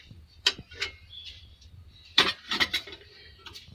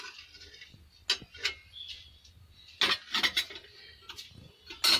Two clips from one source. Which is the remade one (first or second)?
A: first